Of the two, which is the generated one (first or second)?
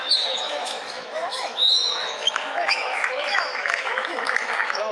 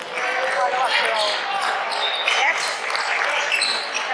first